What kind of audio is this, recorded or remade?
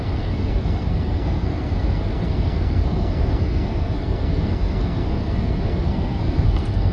remade